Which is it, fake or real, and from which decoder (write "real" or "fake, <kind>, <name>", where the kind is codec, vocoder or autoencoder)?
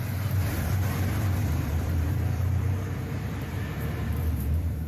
fake, vocoder, BigVGAN v2